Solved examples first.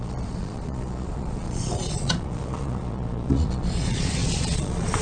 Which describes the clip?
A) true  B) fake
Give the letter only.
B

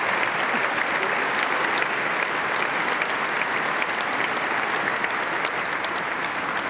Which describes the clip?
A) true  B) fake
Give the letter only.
A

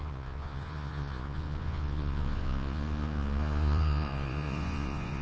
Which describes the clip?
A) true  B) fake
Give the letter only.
B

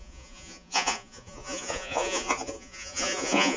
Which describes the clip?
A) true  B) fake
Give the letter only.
B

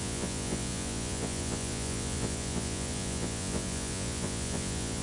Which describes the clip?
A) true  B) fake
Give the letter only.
B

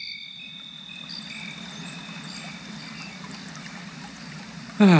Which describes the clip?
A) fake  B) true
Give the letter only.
B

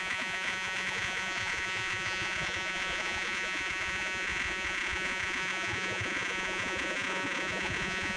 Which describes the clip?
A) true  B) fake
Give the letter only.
B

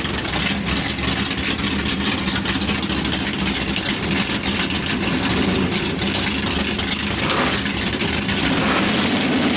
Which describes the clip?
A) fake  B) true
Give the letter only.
B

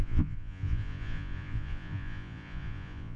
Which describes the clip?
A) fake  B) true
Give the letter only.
A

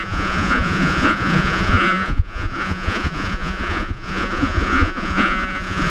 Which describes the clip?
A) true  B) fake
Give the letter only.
B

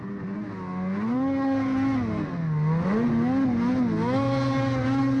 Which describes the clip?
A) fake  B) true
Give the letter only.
B